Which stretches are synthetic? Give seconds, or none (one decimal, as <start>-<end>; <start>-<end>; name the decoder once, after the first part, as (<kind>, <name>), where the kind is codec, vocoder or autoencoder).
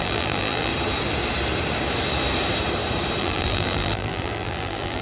0.0-0.7 (vocoder, BigVGAN v2); 3.2-5.0